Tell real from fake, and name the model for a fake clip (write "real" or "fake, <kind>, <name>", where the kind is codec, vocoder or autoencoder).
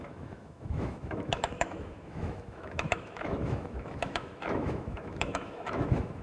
fake, autoencoder, DAC-VAE